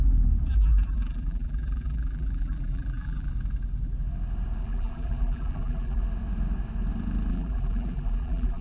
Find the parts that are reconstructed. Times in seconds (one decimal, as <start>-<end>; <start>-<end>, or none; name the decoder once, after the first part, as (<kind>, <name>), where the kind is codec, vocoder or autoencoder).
0.5-3.3 (vocoder, BigVGAN v2); 4.6-6.0; 7.3-8.6